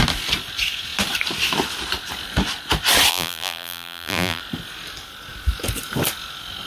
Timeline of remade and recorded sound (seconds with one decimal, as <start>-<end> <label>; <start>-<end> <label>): 0.0-3.1 recorded; 3.1-4.4 remade; 4.4-6.7 recorded